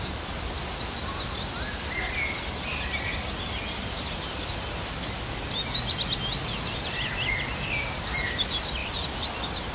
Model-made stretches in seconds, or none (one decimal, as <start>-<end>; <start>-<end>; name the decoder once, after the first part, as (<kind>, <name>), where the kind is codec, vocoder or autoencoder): none